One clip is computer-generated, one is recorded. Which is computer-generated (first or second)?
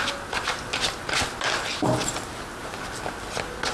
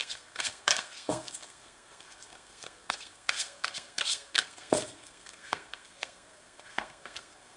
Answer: second